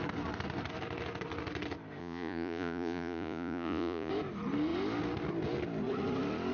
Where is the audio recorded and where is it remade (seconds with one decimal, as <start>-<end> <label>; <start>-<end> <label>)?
0.0-2.0 recorded; 2.0-4.1 remade; 4.1-6.5 recorded